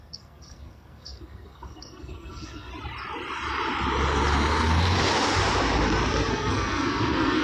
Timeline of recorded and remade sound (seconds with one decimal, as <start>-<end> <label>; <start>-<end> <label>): 0.0-2.7 remade; 2.7-6.3 recorded; 6.3-7.4 remade